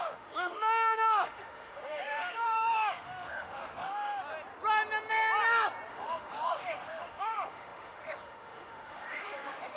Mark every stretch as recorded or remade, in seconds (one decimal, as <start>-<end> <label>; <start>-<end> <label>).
0.0-4.2 remade; 4.2-5.9 recorded; 5.9-9.8 remade